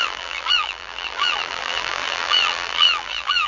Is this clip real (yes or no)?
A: no